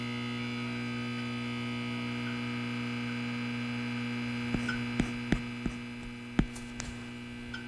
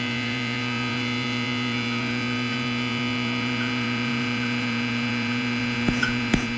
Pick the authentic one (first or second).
first